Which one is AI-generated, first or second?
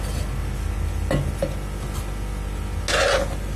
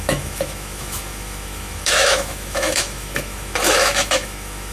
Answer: second